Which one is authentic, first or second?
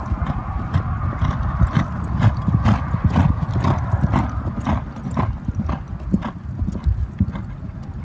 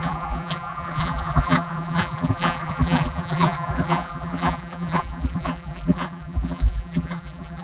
first